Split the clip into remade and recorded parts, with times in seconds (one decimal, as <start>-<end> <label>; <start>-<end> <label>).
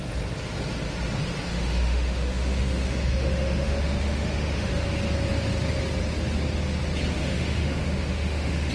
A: 0.0-1.5 recorded; 1.5-4.7 remade; 4.7-7.2 recorded; 7.2-8.7 remade